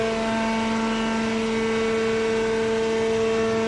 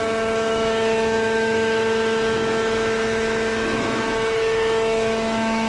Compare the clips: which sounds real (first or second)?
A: first